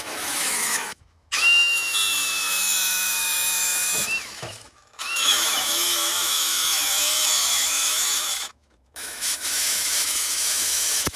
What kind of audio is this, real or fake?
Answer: fake